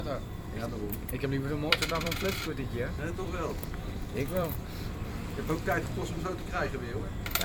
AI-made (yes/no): yes